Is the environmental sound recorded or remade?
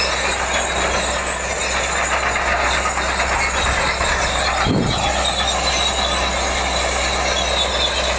recorded